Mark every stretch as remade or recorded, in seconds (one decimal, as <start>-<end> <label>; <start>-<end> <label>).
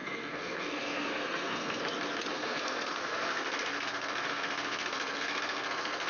0.0-1.8 remade; 1.8-2.3 recorded; 2.3-6.1 remade